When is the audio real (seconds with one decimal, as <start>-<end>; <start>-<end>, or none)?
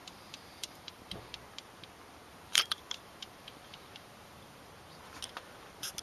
1.2-2.3; 4.6-6.0